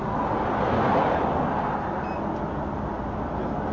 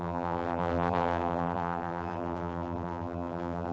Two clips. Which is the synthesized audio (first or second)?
second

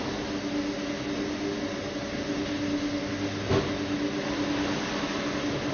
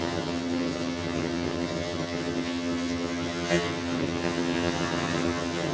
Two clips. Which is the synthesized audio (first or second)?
second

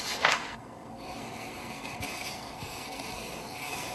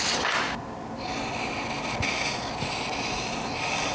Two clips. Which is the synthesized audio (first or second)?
first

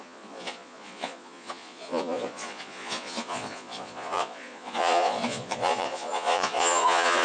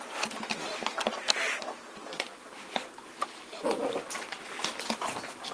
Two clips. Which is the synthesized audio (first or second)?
first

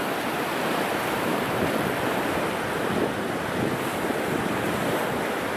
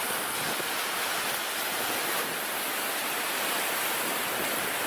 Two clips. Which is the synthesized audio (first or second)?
first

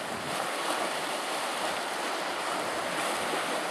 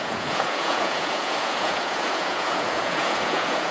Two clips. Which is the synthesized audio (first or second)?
second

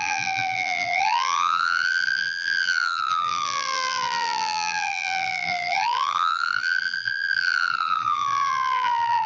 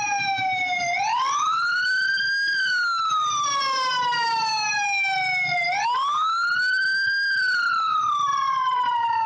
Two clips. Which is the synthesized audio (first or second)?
first